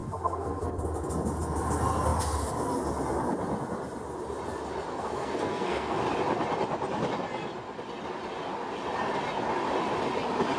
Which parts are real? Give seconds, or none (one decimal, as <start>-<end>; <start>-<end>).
0.8-4.9; 6.0-10.6

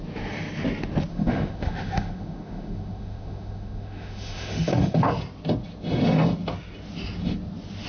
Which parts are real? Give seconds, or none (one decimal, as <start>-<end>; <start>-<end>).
0.0-1.1; 5.1-7.9

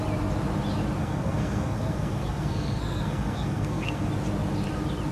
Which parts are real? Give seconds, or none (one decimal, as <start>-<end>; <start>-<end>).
0.0-1.0; 4.1-5.1

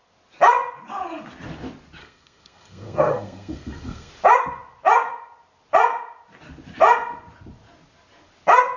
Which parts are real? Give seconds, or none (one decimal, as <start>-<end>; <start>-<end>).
0.0-2.0; 4.1-8.8

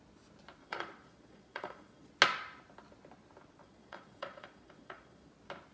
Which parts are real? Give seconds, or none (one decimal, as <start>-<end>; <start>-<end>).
0.0-0.6; 2.1-3.6; 5.3-5.7